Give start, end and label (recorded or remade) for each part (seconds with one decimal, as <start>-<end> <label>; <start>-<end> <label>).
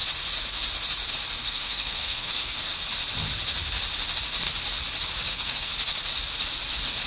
0.0-1.4 recorded; 1.4-2.7 remade; 2.7-5.3 recorded; 5.3-5.7 remade; 5.7-7.1 recorded